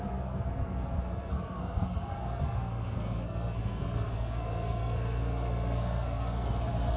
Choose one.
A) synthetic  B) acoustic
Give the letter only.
A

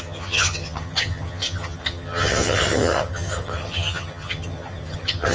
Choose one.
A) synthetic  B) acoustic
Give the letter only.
A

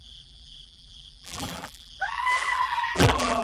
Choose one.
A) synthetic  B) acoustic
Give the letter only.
A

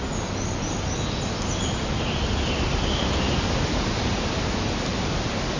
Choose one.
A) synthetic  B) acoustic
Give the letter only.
B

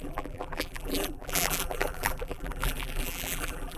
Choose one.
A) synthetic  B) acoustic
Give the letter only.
A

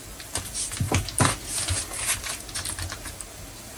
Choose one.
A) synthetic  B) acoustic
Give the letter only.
B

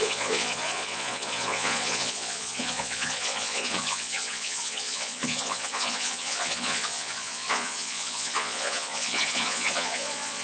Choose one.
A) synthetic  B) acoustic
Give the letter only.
A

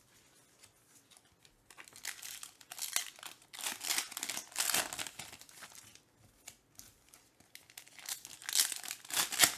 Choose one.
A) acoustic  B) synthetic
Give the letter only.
A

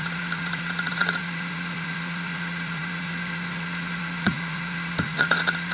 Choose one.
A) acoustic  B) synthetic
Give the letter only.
B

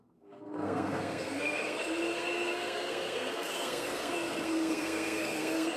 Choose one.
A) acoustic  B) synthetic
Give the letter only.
B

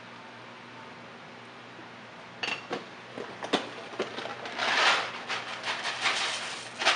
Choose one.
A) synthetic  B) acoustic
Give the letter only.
B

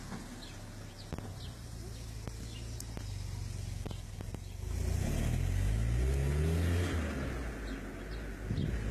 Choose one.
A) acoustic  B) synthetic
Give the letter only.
A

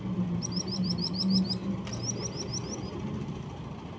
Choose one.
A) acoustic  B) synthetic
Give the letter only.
A